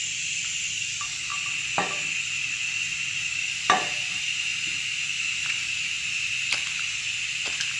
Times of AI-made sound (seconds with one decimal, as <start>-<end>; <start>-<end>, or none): 0.0-1.3; 2.3-4.5; 6.4-7.8